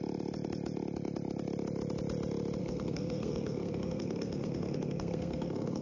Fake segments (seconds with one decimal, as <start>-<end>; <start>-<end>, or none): 2.6-5.8